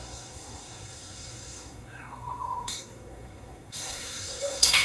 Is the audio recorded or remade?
remade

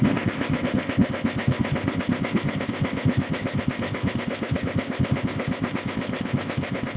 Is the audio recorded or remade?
remade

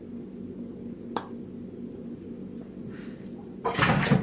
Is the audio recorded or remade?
recorded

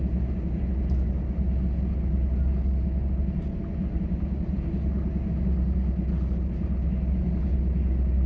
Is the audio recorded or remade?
recorded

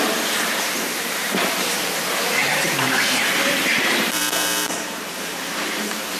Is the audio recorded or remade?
remade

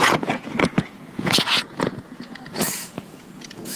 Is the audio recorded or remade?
remade